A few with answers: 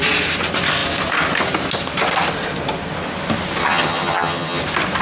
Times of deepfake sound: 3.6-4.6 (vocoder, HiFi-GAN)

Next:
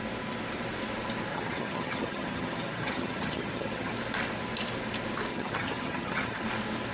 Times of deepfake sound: 1.3-3.9 (vocoder, HiFi-GAN); 5.3-6.4

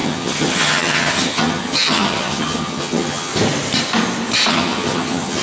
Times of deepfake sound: 0.0-3.3 (vocoder, HiFi-GAN); 4.5-5.4

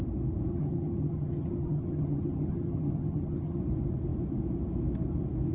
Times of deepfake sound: 0.5-3.6 (vocoder, HiFi-GAN)

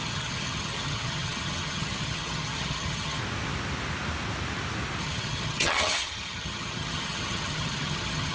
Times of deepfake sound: 0.0-3.2 (vocoder, HiFi-GAN); 5.0-8.3

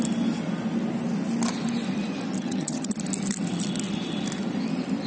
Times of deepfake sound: 2.4-2.9 (vocoder, HiFi-GAN)

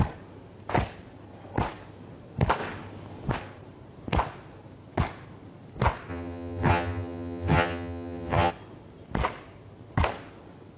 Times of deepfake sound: 6.1-8.5 (vocoder, HiFi-GAN)